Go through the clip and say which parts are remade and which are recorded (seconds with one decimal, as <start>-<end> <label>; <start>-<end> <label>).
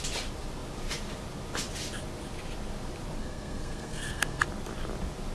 0.0-3.2 recorded; 3.2-4.4 remade; 4.4-5.3 recorded